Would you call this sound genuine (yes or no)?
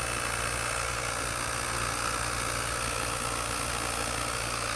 yes